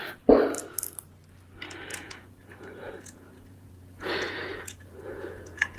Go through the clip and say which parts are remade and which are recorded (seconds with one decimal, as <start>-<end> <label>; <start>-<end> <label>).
0.0-1.9 recorded; 1.9-5.8 remade